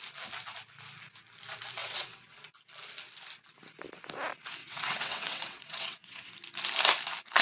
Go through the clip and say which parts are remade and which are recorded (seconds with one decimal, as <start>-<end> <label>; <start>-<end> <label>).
0.0-1.8 recorded; 1.8-2.3 remade; 2.3-4.6 recorded; 4.6-6.3 remade; 6.3-7.4 recorded